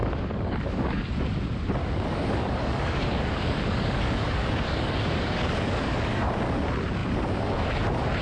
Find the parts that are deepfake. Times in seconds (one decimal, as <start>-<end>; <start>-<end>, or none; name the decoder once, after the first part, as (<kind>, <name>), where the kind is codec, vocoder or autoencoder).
0.0-1.0 (codec, DAC); 1.8-6.3